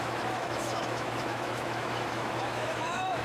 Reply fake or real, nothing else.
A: fake